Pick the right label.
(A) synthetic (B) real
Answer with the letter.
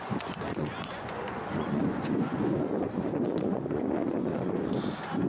A